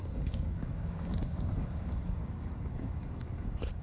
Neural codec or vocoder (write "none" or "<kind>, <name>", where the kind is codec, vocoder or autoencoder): codec, DAC